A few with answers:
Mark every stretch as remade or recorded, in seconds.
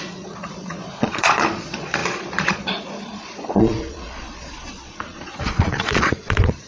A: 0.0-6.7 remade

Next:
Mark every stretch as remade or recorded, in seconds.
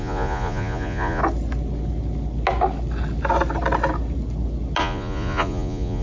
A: 0.0-1.2 remade; 1.2-4.8 recorded; 4.8-6.0 remade